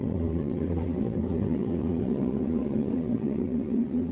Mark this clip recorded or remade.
remade